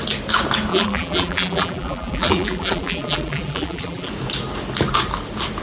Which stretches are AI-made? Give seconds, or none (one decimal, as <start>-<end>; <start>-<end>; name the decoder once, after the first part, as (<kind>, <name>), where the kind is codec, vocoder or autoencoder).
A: 0.7-4.1 (vocoder, BigVGAN v2)